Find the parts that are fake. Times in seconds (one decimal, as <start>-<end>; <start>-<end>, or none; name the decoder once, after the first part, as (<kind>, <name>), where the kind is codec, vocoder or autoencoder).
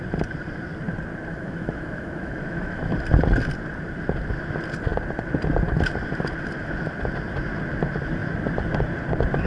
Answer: 1.3-2.9 (autoencoder, DAC-VAE)